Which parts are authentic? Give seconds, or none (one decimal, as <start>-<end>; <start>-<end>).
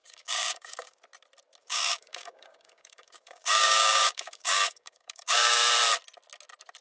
1.0-1.6; 5.7-6.8